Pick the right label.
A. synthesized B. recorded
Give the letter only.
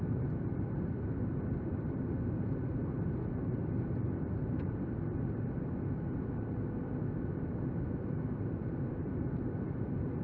B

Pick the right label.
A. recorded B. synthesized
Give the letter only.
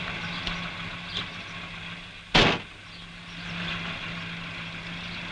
A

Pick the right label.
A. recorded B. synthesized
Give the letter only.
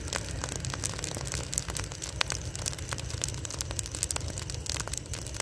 A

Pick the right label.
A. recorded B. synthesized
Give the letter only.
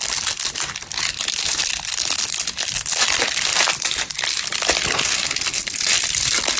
A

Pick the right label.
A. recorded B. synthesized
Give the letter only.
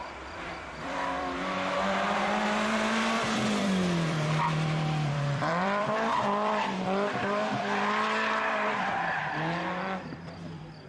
B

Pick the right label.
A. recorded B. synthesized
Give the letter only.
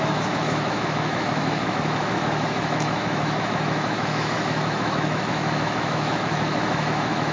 B